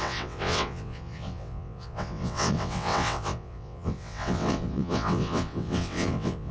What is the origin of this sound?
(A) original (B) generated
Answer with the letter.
B